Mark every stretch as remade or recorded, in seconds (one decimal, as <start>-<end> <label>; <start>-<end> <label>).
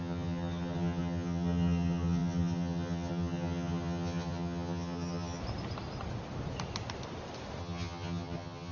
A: 0.0-5.4 remade; 5.4-7.6 recorded; 7.6-8.7 remade